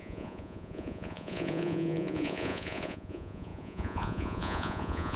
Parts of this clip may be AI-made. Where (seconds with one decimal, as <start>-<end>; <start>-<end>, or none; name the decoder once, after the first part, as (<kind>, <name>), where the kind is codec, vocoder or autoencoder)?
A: 0.0-5.2 (vocoder, Vocos)